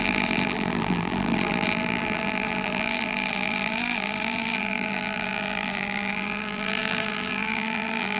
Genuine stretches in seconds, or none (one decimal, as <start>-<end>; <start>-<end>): none